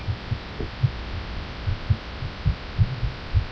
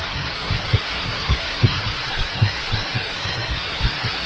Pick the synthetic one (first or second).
second